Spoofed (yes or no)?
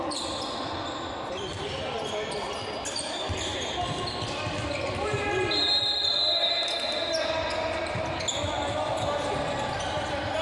no